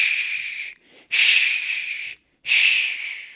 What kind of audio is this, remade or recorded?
recorded